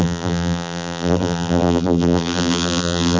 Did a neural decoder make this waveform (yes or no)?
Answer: yes